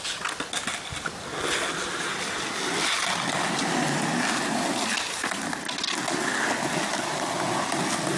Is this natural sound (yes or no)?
yes